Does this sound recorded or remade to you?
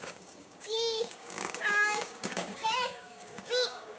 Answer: remade